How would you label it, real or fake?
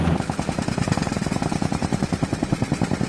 real